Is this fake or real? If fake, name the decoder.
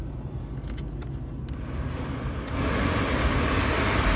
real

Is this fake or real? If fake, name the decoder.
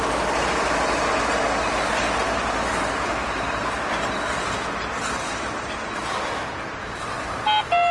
real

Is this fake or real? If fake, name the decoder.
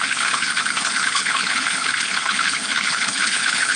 fake, codec, HILCodec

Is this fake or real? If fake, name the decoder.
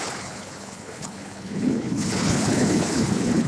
fake, codec, HILCodec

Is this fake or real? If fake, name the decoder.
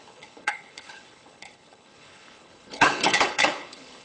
fake, codec, HILCodec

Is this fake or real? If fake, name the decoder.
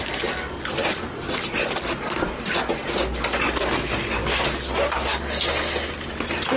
real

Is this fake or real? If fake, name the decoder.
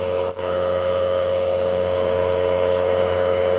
fake, codec, HILCodec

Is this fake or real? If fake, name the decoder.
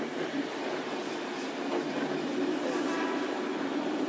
real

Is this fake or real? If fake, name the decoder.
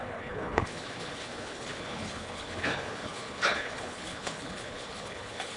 fake, codec, HILCodec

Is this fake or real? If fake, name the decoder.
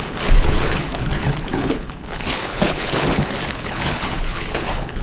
fake, codec, HILCodec